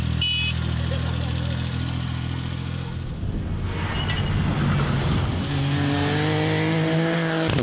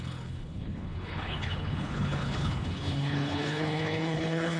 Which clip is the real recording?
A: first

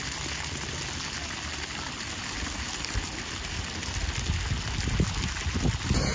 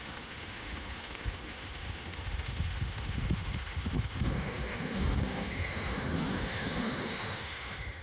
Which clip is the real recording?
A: first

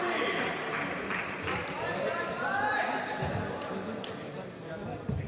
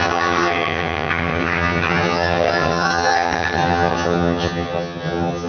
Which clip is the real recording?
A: first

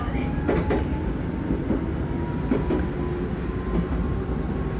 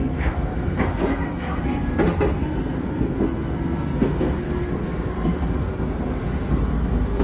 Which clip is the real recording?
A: first